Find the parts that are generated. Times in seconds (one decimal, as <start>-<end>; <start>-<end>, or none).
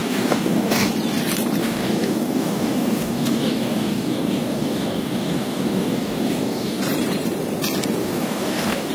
0.0-0.9; 1.6-6.8; 8.0-8.9